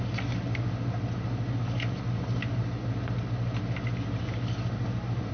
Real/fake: real